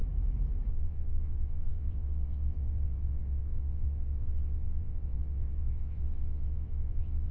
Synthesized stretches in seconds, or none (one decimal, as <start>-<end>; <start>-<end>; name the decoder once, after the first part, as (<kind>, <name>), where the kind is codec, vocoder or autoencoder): 0.7-7.3 (vocoder, WaveNeXt)